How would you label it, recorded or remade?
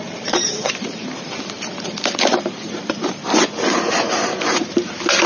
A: remade